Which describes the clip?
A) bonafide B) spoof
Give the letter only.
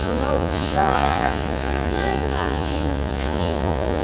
B